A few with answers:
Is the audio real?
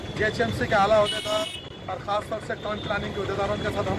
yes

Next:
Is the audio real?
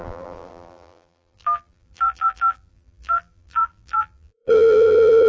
no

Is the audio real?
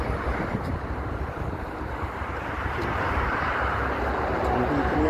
no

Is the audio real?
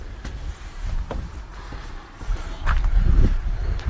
no